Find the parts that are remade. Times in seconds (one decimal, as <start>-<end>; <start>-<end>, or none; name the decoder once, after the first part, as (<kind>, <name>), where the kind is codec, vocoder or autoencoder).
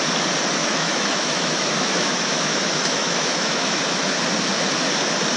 0.6-3.8 (autoencoder, DAC-VAE)